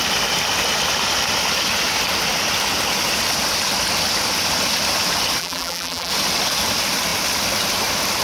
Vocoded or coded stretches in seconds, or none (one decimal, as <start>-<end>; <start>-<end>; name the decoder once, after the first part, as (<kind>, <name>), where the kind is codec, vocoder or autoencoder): 5.4-6.1 (vocoder, BigVGAN v2)